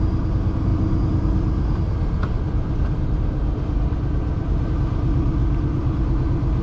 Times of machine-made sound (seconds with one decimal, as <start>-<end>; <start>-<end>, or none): none